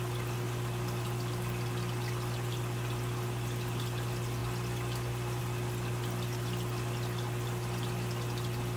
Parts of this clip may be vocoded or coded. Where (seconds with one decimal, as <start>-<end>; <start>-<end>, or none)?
none